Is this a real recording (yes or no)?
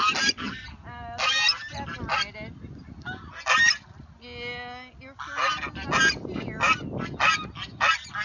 yes